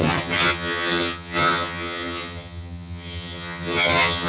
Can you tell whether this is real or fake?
fake